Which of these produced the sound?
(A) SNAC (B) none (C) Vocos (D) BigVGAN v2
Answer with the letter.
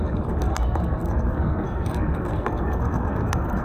A